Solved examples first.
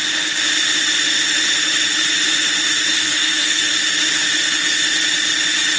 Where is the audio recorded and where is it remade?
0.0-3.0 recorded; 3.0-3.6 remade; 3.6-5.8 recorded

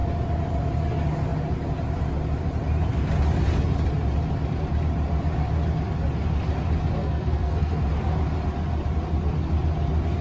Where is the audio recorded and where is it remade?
0.0-7.0 recorded; 7.0-7.8 remade; 7.8-10.2 recorded

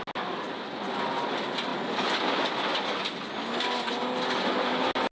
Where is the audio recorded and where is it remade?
0.0-5.1 recorded

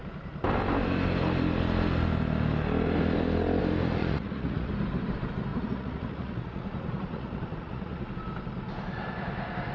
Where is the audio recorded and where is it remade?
0.0-4.0 recorded; 4.0-4.7 remade; 4.7-5.5 recorded; 5.5-8.1 remade; 8.1-9.7 recorded

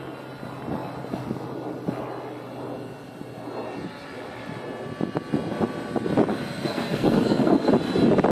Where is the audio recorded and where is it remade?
0.0-6.2 recorded; 6.2-7.7 remade; 7.7-8.3 recorded